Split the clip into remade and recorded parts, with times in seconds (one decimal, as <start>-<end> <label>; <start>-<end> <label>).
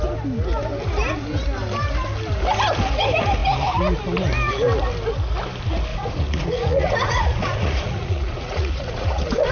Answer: 0.0-5.9 recorded; 5.9-9.5 remade